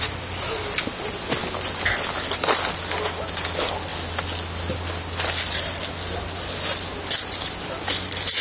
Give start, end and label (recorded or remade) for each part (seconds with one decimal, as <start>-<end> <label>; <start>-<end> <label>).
0.0-8.4 recorded